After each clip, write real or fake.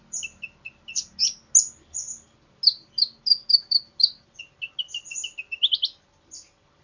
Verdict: real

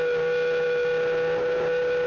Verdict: real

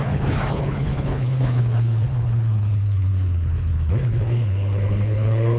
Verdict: fake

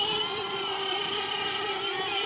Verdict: real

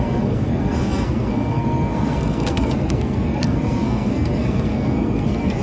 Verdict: fake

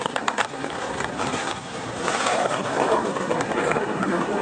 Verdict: fake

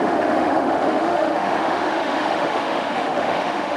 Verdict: fake